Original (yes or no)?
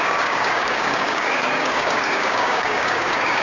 no